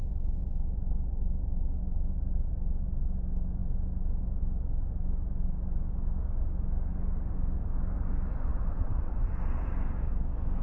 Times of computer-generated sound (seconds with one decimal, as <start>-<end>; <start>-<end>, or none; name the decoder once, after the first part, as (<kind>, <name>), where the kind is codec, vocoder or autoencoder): 8.5-9.4 (vocoder, WaveNeXt)